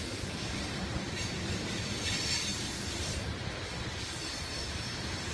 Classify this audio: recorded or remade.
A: remade